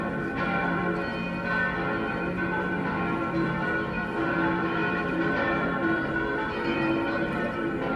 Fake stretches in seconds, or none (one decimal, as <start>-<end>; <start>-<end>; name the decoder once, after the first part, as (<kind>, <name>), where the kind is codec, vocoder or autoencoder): 0.0-0.8 (vocoder, BigVGAN v2); 2.1-8.0